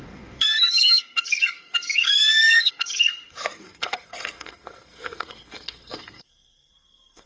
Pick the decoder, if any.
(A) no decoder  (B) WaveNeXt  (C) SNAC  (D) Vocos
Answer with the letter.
C